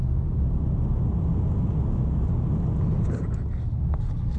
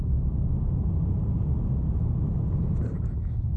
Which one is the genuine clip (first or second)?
first